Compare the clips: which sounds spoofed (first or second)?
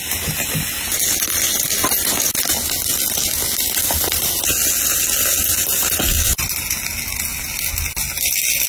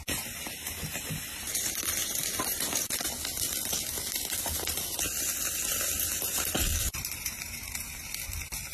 second